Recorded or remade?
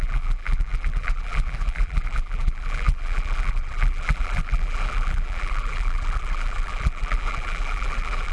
remade